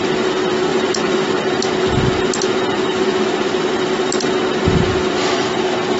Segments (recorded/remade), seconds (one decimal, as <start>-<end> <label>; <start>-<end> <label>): 0.0-0.7 recorded; 0.7-1.4 remade; 1.4-6.0 recorded